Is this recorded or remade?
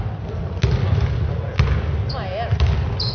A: recorded